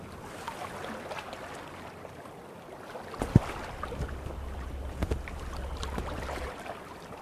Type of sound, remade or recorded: recorded